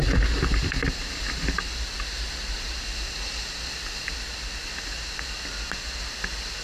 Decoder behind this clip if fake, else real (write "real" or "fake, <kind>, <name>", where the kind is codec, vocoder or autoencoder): real